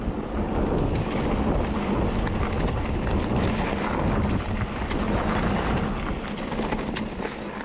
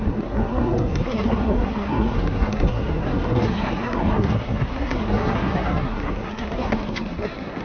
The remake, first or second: second